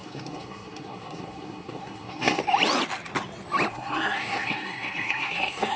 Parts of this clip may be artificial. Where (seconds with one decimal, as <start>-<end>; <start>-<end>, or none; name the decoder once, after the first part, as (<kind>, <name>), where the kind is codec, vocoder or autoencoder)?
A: 0.0-2.4 (codec, SNAC); 3.7-5.8